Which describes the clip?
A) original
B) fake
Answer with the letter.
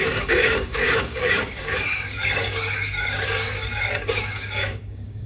B